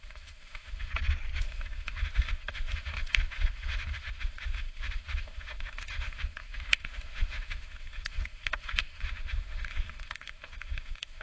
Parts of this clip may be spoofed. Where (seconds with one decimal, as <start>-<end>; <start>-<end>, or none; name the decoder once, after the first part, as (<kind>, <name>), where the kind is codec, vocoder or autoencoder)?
0.0-0.9 (autoencoder, DAC-VAE); 1.4-11.2